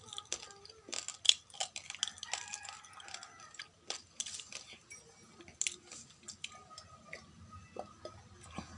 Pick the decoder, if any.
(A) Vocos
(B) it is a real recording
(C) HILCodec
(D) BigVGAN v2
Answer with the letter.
B